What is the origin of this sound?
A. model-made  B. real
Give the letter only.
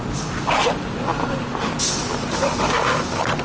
B